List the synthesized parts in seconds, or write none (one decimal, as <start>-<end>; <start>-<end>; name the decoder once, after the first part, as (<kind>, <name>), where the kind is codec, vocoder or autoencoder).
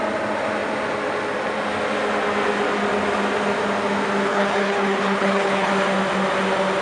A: 4.3-5.7 (codec, HILCodec)